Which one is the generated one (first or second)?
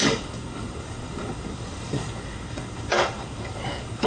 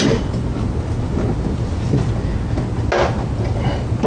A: first